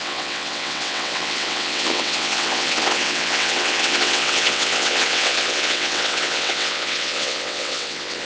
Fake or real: fake